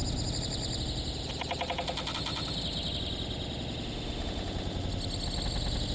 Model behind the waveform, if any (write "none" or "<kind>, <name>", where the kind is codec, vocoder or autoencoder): none